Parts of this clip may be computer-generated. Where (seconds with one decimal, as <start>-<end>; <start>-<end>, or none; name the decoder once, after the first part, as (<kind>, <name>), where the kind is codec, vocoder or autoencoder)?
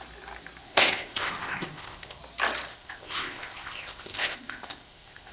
0.6-2.2 (codec, ZipCodec); 2.7-5.3